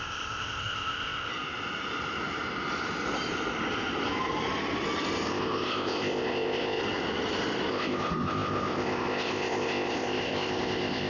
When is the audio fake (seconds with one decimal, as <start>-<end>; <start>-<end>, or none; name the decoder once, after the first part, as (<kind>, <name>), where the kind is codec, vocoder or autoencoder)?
0.0-1.3 (codec, ZipCodec); 5.3-6.8; 7.7-11.1